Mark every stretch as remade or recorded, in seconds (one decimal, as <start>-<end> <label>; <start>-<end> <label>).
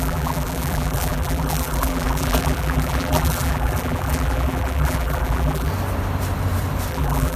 0.0-5.7 remade; 5.7-6.9 recorded; 6.9-7.4 remade